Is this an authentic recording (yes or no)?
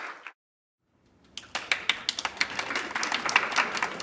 yes